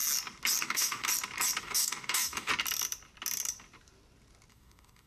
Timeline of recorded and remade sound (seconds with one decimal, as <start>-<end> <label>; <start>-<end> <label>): 0.0-0.6 recorded; 0.6-1.1 remade; 1.1-1.6 recorded; 1.6-2.5 remade; 2.5-4.5 recorded; 4.5-5.1 remade